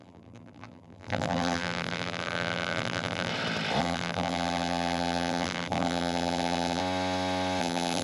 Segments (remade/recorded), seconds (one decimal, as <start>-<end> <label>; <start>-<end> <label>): 0.0-3.3 remade; 3.3-3.8 recorded; 3.8-6.8 remade; 6.8-7.6 recorded; 7.6-8.0 remade